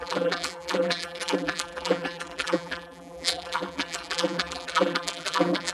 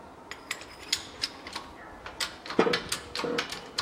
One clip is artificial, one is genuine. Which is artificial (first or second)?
first